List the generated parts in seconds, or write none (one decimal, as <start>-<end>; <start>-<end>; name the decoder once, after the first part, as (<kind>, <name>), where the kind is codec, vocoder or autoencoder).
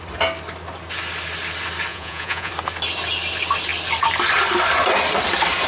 1.9-2.5 (vocoder, Vocos)